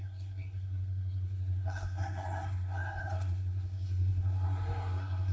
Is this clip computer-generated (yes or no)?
yes